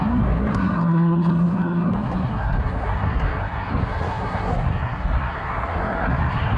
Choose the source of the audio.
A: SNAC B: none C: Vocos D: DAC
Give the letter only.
A